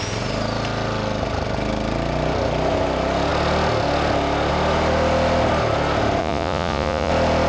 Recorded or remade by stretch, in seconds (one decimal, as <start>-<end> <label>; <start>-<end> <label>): 0.0-6.2 recorded; 6.2-7.1 remade; 7.1-7.5 recorded